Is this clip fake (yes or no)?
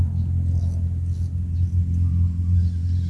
no